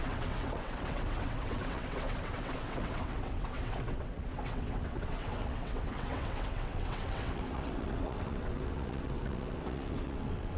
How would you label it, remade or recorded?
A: remade